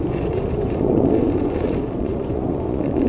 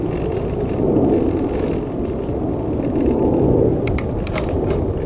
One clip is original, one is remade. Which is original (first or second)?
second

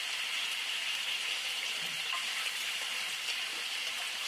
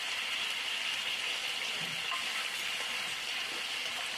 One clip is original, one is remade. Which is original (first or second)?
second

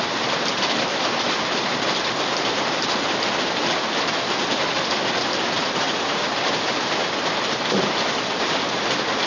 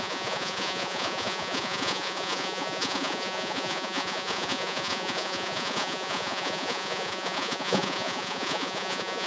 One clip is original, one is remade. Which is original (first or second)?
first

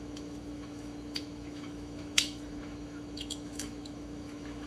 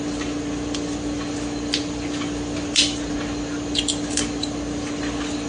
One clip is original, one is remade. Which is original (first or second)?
second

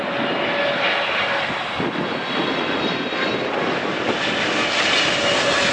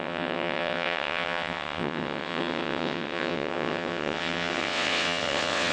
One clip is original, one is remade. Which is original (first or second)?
first